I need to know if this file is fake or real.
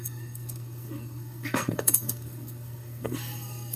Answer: fake